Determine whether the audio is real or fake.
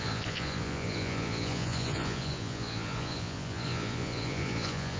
fake